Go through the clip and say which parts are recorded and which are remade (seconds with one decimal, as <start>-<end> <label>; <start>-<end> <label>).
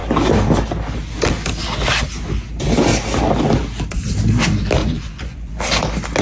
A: 0.0-4.8 recorded; 4.8-5.5 remade; 5.5-6.2 recorded